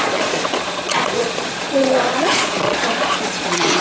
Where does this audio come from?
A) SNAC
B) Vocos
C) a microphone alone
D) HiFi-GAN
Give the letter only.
B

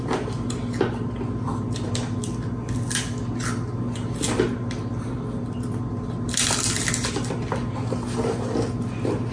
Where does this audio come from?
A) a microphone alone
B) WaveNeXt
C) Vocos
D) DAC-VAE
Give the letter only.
A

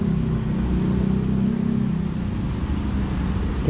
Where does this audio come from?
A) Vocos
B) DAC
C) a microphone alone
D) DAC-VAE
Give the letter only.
C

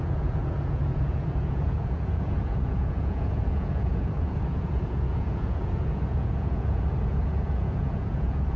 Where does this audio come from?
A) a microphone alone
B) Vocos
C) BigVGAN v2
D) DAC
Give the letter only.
B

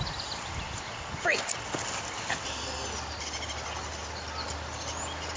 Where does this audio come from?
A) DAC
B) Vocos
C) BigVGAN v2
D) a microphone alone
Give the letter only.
D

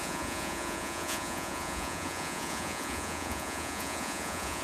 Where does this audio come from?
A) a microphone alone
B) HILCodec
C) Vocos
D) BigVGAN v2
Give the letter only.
C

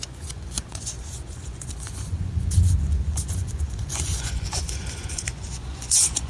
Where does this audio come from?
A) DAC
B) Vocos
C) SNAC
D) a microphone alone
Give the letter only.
B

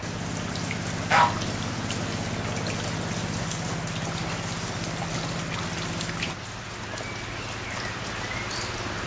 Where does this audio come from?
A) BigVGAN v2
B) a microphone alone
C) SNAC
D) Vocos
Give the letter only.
B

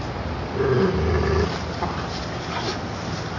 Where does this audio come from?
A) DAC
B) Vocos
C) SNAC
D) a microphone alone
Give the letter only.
D